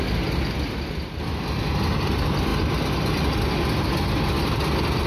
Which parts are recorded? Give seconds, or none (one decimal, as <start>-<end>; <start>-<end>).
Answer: 0.0-5.1

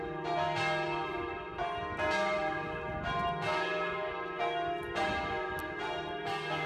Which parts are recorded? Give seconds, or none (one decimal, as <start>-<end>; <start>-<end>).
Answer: 0.0-6.7

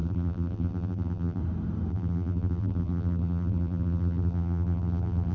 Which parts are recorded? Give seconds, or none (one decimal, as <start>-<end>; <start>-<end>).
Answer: 1.4-1.9

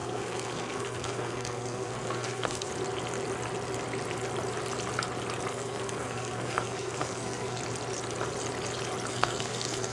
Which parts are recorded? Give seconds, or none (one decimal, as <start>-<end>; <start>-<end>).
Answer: 2.7-5.5; 7.6-9.1

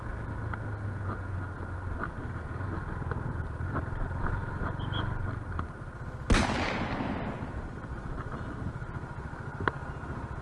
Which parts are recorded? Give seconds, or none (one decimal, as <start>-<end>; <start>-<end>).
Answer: 0.0-10.4

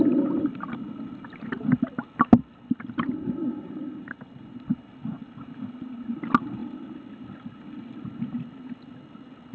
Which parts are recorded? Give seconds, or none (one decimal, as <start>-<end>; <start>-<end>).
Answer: 0.0-9.5